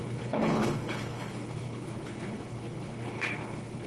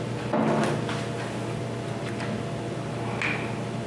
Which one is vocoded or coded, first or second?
first